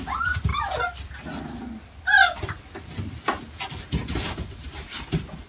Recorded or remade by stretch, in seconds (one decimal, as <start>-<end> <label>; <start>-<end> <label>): 0.0-0.5 remade; 0.5-3.8 recorded; 3.8-5.5 remade